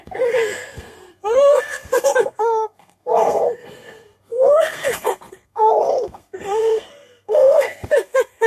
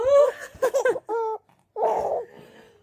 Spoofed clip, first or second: first